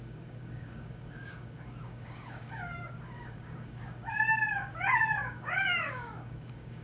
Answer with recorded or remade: remade